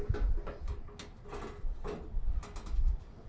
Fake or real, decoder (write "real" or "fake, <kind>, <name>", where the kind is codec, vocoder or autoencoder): real